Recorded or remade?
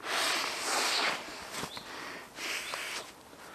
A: recorded